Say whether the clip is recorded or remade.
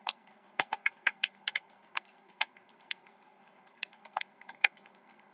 remade